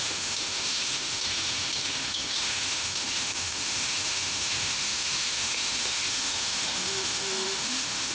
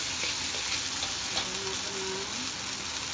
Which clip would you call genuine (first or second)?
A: second